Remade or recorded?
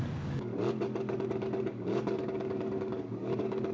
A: remade